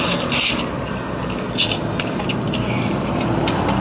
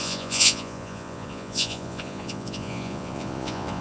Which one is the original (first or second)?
first